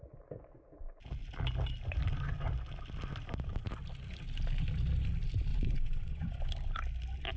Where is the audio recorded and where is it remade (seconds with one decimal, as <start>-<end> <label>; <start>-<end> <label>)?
0.0-5.5 recorded; 5.5-6.5 remade; 6.5-7.4 recorded